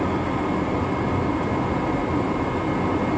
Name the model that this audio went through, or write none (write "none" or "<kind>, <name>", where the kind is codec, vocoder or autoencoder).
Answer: none